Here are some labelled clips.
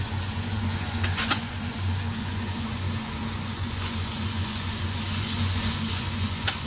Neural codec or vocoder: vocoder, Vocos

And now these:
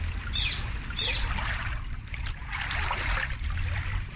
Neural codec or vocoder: none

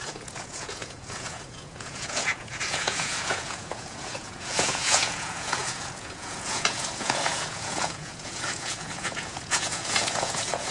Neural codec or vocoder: vocoder, Vocos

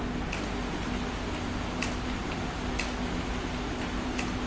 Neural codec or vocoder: none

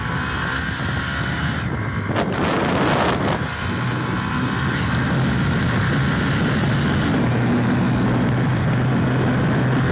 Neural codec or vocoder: none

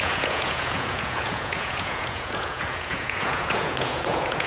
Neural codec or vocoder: vocoder, Vocos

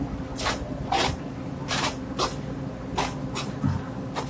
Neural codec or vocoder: none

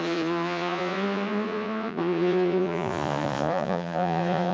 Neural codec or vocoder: vocoder, Vocos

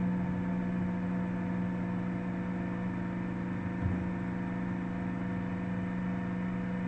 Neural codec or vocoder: none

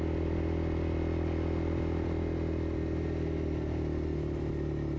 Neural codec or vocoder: none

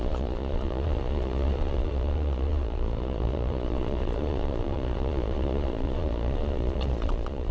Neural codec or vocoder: vocoder, Vocos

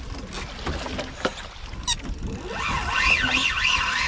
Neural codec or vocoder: none